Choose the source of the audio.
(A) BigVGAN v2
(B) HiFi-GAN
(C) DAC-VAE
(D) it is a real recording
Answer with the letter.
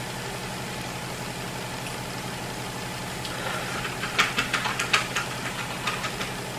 D